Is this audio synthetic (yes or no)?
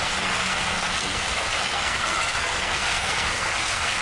yes